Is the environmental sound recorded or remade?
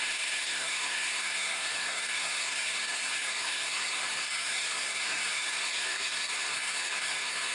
remade